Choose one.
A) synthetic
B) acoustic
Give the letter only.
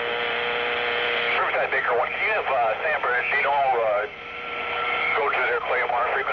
B